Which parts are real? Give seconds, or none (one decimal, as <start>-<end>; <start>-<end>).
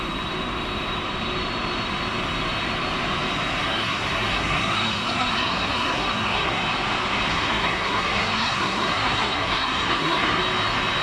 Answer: 0.0-3.6; 6.6-7.3; 10.4-11.0